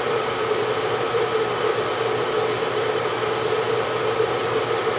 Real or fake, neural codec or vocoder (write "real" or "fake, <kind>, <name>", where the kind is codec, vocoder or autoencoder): real